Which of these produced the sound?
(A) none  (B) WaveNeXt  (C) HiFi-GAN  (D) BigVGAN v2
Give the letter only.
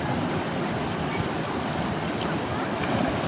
A